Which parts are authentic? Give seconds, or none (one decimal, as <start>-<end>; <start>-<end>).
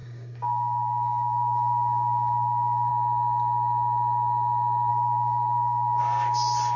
2.9-4.9; 6.0-6.8